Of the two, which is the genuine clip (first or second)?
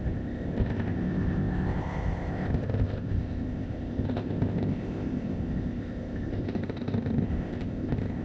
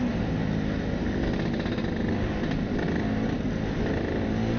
second